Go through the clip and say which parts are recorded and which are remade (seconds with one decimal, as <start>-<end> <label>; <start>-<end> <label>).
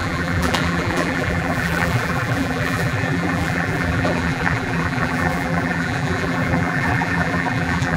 0.0-8.0 remade